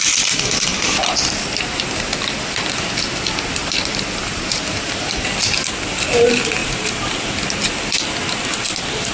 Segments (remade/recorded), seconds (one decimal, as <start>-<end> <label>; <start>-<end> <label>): 0.0-3.6 recorded; 3.6-5.1 remade; 5.1-6.6 recorded; 6.6-7.1 remade; 7.1-9.1 recorded